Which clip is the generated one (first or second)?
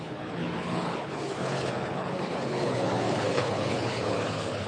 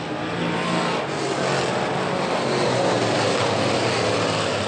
first